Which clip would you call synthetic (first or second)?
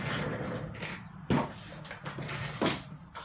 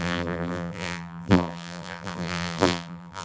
second